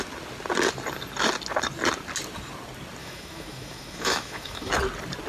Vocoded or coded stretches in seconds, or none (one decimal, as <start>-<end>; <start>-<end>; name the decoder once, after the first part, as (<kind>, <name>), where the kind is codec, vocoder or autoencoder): 3.0-4.7 (autoencoder, DAC-VAE)